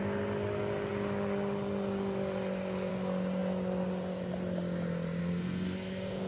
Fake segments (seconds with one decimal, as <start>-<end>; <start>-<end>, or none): 5.2-6.3